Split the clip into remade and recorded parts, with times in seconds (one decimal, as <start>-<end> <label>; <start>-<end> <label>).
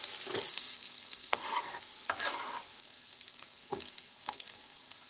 0.0-0.5 recorded; 0.5-1.8 remade; 1.8-2.8 recorded; 2.8-5.1 remade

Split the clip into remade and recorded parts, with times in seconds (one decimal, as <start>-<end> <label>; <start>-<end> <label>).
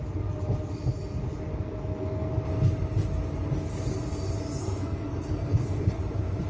0.0-1.5 recorded; 1.5-2.3 remade; 2.3-4.6 recorded; 4.6-6.0 remade; 6.0-6.5 recorded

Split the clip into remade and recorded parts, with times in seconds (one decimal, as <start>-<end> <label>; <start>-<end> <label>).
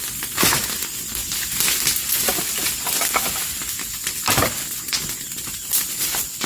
0.0-6.5 recorded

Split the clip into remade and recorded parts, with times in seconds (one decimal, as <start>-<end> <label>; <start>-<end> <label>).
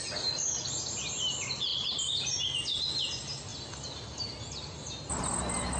0.0-5.8 recorded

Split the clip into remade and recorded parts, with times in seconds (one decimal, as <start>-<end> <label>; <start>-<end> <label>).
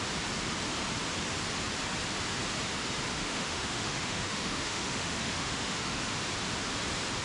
0.0-3.1 recorded; 3.1-6.0 remade; 6.0-7.2 recorded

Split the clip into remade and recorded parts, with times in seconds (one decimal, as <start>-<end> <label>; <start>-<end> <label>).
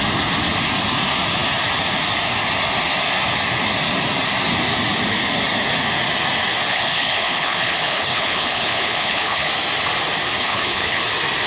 0.0-6.7 recorded; 6.7-9.5 remade; 9.5-10.4 recorded; 10.4-11.0 remade; 11.0-11.5 recorded